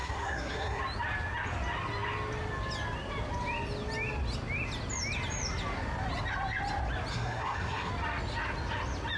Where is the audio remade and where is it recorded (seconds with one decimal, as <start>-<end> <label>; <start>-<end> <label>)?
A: 0.0-0.8 remade; 0.8-7.1 recorded; 7.1-7.9 remade; 7.9-9.2 recorded